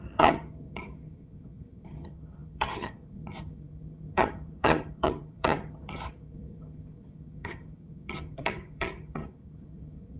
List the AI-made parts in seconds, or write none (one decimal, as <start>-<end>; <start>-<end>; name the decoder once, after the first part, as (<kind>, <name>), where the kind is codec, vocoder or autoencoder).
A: 0.0-10.2 (vocoder, HiFi-GAN)